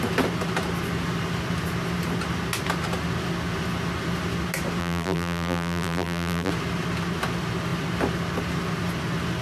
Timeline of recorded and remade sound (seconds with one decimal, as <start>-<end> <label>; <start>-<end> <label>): 0.0-4.8 recorded; 4.8-6.5 remade; 6.5-9.4 recorded